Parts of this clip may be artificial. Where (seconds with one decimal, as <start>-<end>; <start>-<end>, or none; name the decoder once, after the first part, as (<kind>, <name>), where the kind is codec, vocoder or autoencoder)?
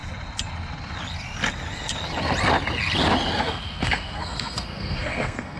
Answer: 3.4-5.6 (codec, SNAC)